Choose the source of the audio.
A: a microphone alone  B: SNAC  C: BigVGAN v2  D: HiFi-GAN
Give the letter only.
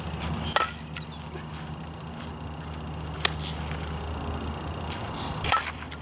A